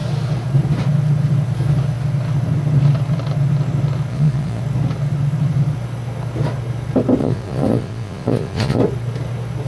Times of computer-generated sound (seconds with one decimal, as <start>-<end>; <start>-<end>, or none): 4.1-4.6; 7.2-8.8